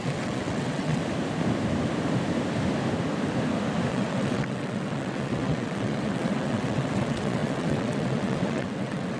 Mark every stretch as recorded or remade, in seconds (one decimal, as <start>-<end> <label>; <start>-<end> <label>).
0.0-1.0 remade; 1.0-3.9 recorded; 3.9-9.2 remade